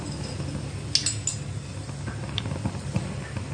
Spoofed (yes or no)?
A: no